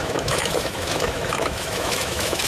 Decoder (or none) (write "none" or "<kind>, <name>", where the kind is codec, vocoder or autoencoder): autoencoder, DAC-VAE